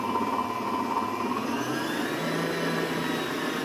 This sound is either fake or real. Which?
real